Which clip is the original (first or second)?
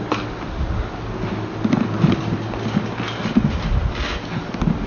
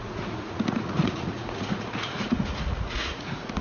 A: first